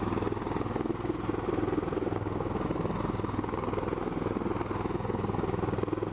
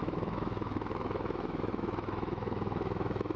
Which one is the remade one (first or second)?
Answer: second